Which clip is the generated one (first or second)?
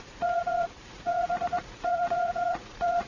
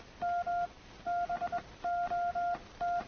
first